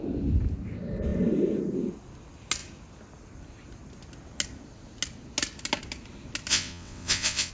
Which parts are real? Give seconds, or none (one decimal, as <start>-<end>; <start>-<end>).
0.0-6.5